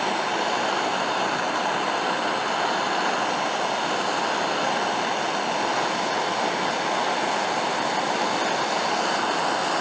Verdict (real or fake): real